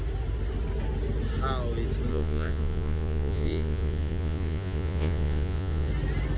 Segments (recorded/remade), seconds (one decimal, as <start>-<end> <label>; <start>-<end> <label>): 0.0-2.1 recorded; 2.1-5.9 remade; 5.9-6.4 recorded

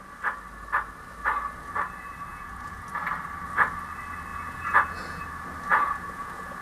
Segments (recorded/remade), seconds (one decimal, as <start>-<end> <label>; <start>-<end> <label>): 0.0-2.3 recorded; 2.3-2.9 remade; 2.9-4.3 recorded; 4.3-5.2 remade; 5.2-5.7 recorded; 5.7-6.6 remade

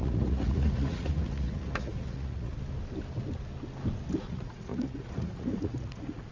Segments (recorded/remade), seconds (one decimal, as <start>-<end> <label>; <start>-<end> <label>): 0.0-2.5 remade; 2.5-4.2 recorded; 4.2-6.3 remade

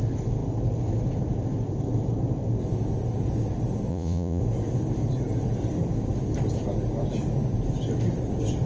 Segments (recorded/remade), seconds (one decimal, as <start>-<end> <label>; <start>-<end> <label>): 0.0-3.9 recorded; 3.9-4.4 remade; 4.4-8.7 recorded